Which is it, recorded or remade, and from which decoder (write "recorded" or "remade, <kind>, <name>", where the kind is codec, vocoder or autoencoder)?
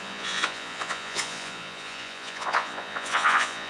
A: remade, vocoder, Vocos